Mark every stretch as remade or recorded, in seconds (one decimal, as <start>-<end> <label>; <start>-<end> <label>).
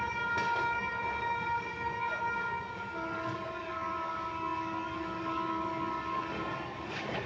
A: 0.0-7.3 remade